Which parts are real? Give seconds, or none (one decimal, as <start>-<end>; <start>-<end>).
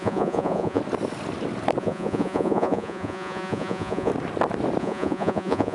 0.8-1.8; 4.1-4.8